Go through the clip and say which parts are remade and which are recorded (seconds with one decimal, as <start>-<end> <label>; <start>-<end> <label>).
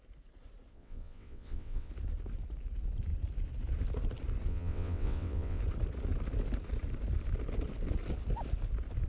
0.0-0.7 recorded; 0.7-1.9 remade; 1.9-4.5 recorded; 4.5-5.6 remade; 5.6-9.1 recorded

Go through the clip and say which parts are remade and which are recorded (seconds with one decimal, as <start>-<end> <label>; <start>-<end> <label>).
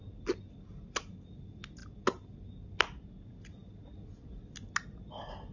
0.0-5.5 recorded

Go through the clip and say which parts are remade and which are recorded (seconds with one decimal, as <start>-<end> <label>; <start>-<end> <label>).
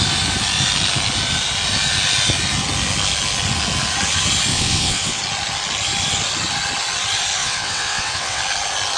0.0-4.5 recorded; 4.5-5.2 remade; 5.2-7.4 recorded; 7.4-8.4 remade; 8.4-9.0 recorded